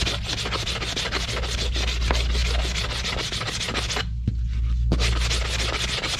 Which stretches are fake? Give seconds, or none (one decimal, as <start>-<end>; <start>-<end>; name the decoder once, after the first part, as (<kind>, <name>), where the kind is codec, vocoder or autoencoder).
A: none